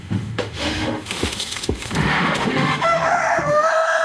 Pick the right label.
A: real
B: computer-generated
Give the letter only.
B